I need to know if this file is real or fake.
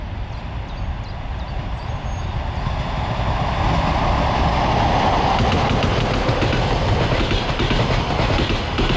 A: real